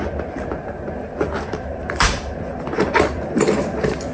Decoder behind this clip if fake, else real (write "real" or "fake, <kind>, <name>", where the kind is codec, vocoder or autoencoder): fake, vocoder, BigVGAN v2